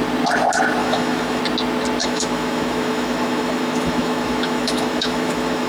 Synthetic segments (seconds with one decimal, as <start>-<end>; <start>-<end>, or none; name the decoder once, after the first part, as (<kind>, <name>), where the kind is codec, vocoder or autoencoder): 0.8-1.4 (autoencoder, DAC-VAE); 2.0-5.7